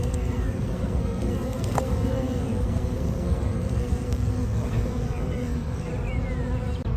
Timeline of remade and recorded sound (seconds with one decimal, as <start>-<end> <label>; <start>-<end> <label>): 0.0-5.9 remade; 5.9-7.0 recorded